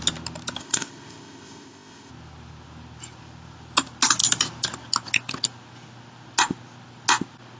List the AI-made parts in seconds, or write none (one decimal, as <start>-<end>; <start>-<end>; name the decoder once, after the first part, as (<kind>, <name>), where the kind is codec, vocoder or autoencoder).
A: 0.6-2.1 (codec, ZipCodec)